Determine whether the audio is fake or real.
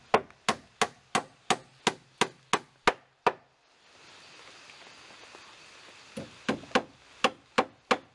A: real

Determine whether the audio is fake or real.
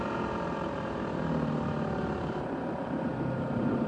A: fake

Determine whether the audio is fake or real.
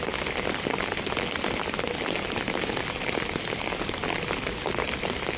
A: real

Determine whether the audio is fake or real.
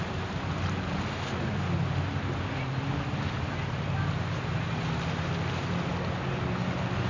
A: real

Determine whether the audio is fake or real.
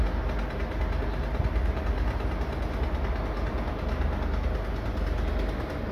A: real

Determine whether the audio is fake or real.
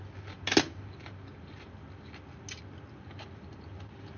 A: real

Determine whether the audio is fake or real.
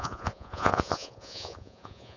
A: fake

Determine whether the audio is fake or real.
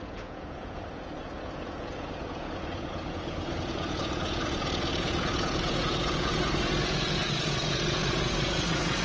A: fake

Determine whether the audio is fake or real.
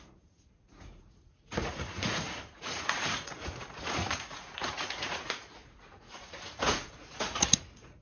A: fake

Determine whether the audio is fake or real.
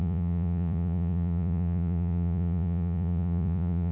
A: fake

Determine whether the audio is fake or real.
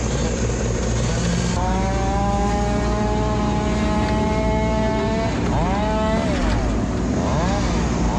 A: real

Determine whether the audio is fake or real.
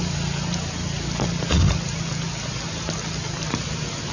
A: real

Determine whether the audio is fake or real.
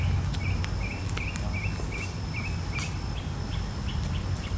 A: real